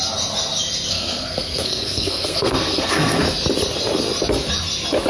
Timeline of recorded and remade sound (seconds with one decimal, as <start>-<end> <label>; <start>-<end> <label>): 0.0-0.9 recorded; 0.9-3.2 remade; 3.2-5.1 recorded